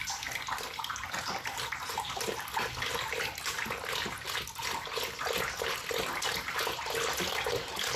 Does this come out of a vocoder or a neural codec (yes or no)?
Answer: no